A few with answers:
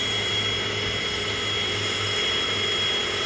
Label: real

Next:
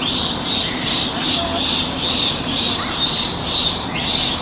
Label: real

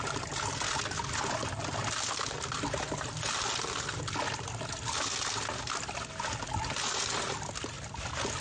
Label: real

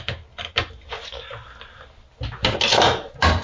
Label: real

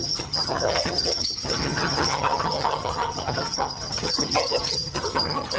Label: fake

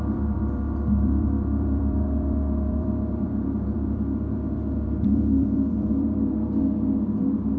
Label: fake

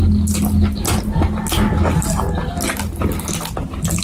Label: real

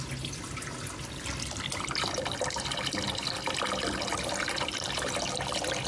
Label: real